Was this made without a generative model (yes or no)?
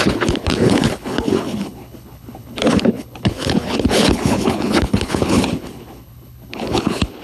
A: no